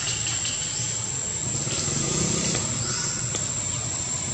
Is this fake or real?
real